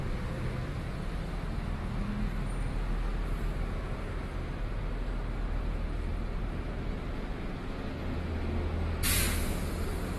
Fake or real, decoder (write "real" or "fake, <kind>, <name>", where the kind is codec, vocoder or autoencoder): real